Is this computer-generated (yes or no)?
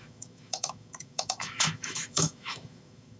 yes